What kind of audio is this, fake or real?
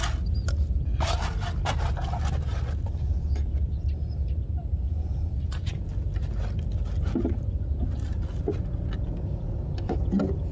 real